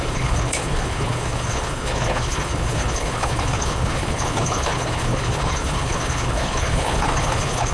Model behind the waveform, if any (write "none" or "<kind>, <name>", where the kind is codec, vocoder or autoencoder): codec, HILCodec